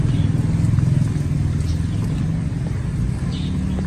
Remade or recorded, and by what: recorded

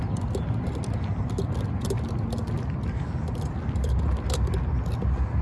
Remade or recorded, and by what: recorded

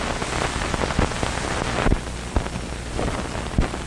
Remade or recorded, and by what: recorded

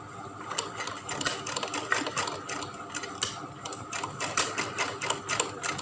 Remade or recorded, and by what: recorded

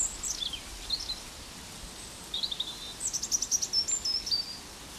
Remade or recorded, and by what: recorded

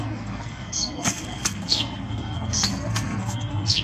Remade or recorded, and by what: remade, codec, SNAC